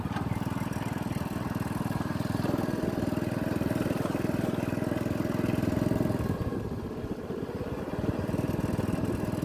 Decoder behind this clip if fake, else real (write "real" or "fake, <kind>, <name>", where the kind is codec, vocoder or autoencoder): real